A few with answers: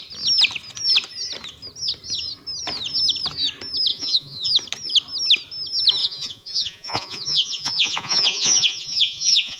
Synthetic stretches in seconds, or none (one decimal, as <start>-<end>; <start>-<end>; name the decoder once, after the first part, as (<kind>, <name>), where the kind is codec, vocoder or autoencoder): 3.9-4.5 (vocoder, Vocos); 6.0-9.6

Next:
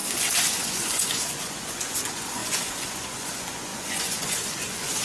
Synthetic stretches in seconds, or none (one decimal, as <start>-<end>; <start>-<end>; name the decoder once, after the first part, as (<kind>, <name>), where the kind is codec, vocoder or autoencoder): 0.0-5.0 (vocoder, Vocos)

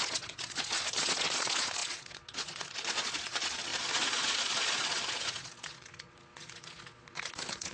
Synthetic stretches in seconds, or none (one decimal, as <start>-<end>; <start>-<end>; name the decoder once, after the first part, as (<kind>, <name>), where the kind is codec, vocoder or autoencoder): 0.0-7.7 (vocoder, Vocos)

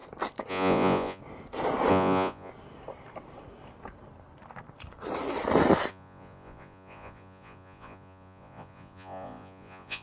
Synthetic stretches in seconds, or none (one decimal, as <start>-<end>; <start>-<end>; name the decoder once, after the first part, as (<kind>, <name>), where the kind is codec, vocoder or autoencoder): 0.5-1.2 (vocoder, Vocos); 1.9-2.5; 5.9-10.0

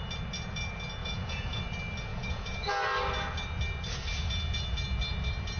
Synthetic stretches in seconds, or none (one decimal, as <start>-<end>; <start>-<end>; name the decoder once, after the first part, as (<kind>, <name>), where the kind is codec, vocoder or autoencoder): 1.0-1.6 (vocoder, Vocos); 2.1-2.7